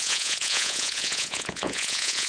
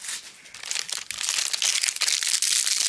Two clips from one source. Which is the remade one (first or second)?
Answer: first